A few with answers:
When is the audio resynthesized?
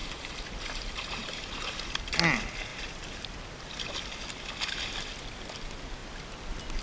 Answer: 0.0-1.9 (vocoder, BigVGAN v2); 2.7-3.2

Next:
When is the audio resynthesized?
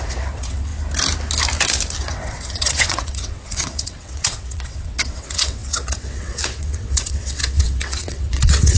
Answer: 0.0-0.7 (vocoder, WaveNeXt); 2.0-8.8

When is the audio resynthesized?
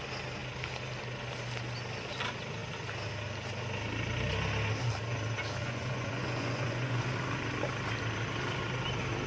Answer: 5.6-7.0 (vocoder, Vocos)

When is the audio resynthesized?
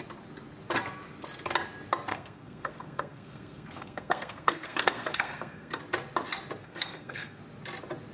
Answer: 2.1-5.8 (codec, SNAC); 6.6-7.4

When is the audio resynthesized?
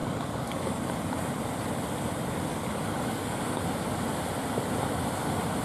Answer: 0.0-1.0 (codec, DAC); 2.5-3.6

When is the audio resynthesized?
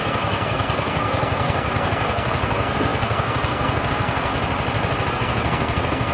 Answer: 0.0-4.3 (codec, SNAC); 5.1-6.1